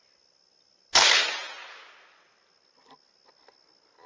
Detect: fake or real real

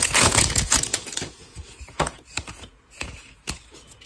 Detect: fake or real fake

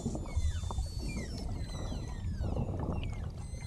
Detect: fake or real real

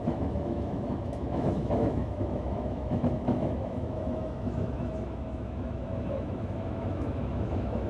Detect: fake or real fake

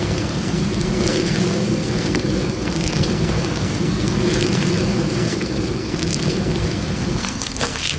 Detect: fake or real fake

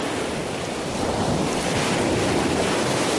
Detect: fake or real real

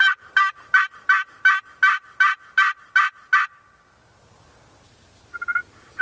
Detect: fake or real real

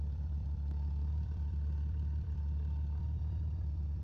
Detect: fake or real fake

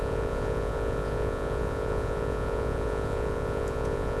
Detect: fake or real fake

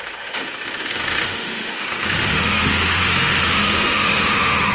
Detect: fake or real fake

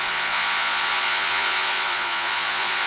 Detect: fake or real fake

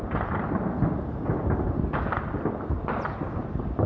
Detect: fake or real real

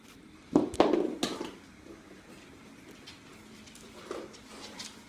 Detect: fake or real real